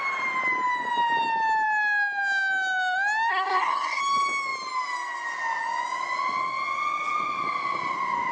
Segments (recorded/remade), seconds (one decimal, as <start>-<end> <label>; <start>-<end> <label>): 0.0-3.3 recorded; 3.3-4.0 remade; 4.0-8.3 recorded